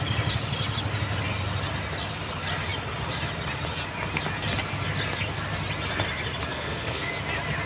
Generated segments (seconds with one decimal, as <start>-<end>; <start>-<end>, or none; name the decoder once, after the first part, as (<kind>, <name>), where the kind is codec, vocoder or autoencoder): 6.5-7.1 (codec, SNAC)